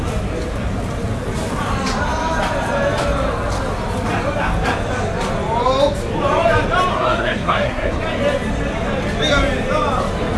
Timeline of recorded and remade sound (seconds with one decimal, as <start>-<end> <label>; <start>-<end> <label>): 0.0-6.9 recorded; 6.9-8.0 remade; 8.0-10.4 recorded